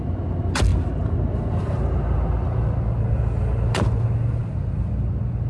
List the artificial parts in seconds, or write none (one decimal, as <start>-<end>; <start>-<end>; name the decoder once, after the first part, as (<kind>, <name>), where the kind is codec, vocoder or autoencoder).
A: none